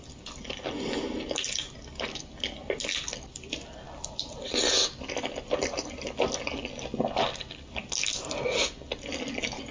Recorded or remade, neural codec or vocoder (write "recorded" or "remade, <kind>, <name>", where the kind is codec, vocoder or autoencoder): recorded